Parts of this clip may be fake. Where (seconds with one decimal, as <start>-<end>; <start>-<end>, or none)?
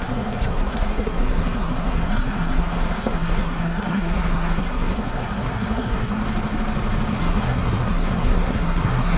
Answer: 0.0-6.2; 7.1-9.2